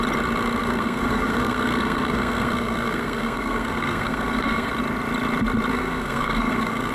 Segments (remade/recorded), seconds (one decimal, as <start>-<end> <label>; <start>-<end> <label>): 0.0-0.6 recorded; 0.6-4.7 remade; 4.7-5.7 recorded; 5.7-6.9 remade